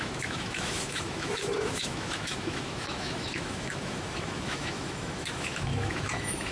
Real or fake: fake